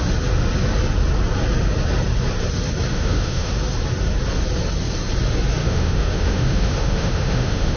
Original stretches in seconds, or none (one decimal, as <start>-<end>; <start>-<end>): 0.0-2.9; 3.5-5.6